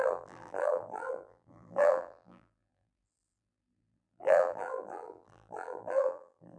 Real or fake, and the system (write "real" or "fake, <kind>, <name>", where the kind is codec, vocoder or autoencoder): fake, vocoder, BigVGAN v2